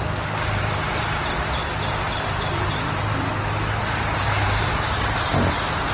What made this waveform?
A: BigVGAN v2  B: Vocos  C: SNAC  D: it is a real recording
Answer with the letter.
A